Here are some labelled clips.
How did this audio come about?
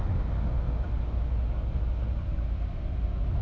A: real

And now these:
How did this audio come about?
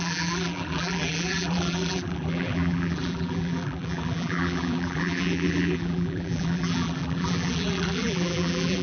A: fake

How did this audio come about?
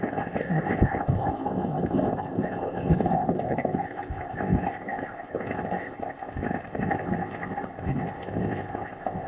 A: fake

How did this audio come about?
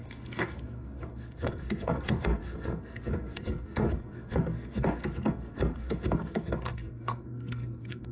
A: fake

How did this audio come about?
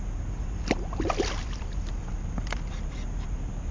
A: real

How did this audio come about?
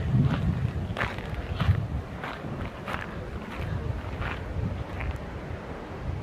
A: real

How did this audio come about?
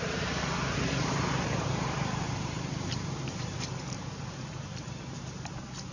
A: fake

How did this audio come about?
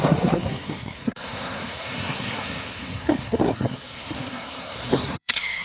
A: fake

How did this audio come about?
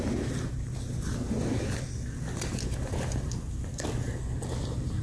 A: real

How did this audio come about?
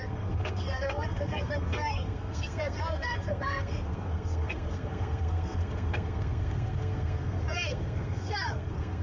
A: fake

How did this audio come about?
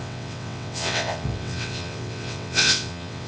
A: fake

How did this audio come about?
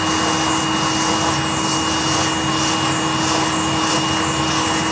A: real